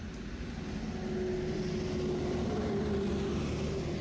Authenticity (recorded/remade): recorded